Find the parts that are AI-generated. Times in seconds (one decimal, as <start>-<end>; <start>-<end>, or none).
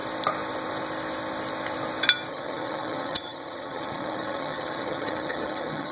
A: 2.3-5.9